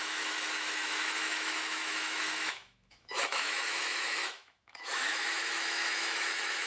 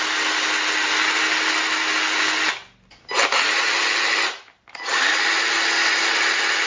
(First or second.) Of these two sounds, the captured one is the second